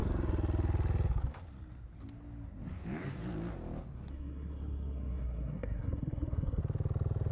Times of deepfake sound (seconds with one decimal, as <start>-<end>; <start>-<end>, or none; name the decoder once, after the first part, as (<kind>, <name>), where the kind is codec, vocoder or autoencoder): 4.1-6.6 (codec, SNAC)